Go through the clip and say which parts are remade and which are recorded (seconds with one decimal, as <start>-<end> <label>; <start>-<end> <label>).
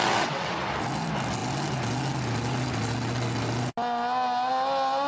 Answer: 0.0-0.5 remade; 0.5-5.1 recorded